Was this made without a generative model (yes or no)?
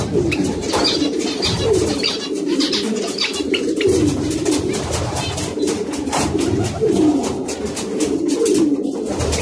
no